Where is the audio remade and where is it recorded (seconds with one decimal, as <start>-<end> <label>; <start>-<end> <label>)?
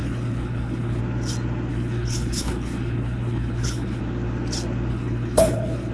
0.0-1.0 remade; 1.0-1.7 recorded; 1.7-4.0 remade; 4.0-4.9 recorded; 4.9-5.9 remade